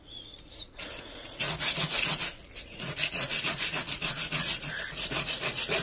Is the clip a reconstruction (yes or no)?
yes